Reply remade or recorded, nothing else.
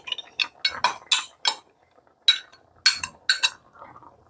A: recorded